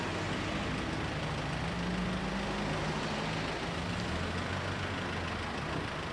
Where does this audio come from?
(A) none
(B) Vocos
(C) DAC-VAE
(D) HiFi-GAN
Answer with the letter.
A